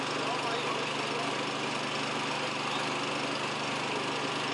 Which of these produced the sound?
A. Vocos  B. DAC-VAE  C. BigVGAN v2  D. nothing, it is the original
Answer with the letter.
D